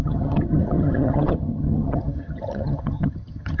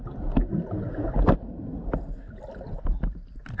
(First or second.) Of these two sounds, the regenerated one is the first